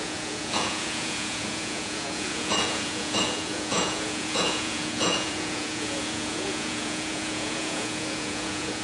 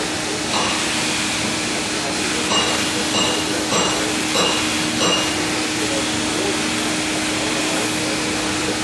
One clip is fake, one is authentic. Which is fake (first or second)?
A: first